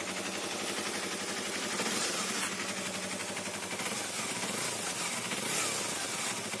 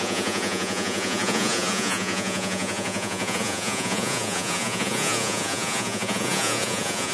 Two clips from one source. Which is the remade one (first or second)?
second